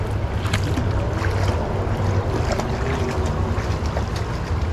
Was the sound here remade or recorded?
recorded